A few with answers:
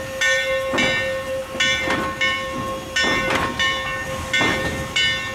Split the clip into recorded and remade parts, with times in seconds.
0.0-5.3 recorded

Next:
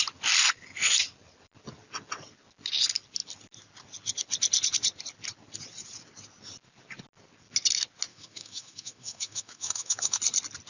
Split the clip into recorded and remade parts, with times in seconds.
0.0-8.1 recorded; 8.1-10.2 remade; 10.2-10.7 recorded

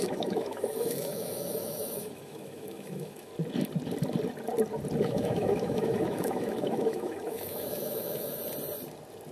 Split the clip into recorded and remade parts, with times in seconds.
0.0-3.3 remade; 3.3-5.0 recorded; 5.0-8.4 remade; 8.4-9.3 recorded

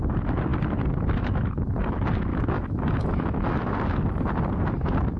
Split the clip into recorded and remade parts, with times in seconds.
0.0-2.3 recorded; 2.3-3.7 remade; 3.7-5.2 recorded

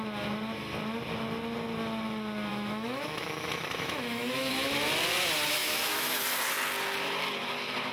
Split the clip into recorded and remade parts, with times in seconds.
0.0-2.5 recorded; 2.5-4.5 remade; 4.5-5.6 recorded; 5.6-6.2 remade; 6.2-7.9 recorded